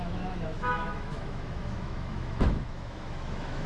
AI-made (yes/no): yes